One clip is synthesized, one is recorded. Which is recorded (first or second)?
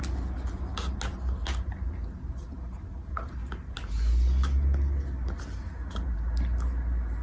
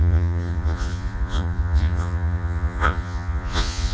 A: first